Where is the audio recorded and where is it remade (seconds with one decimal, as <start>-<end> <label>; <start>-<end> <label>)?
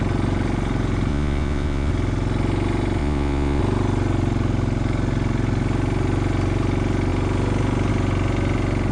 0.0-1.1 recorded; 1.1-1.9 remade; 1.9-3.0 recorded; 3.0-3.6 remade; 3.6-8.9 recorded